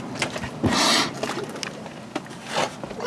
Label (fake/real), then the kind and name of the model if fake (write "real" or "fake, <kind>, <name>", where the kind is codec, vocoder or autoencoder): real